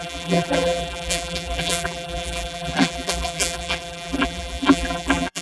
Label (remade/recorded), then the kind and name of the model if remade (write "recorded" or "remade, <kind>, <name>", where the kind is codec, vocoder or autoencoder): remade, vocoder, BigVGAN v2